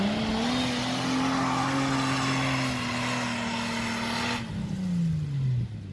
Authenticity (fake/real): real